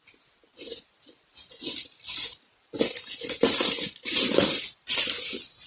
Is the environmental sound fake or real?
real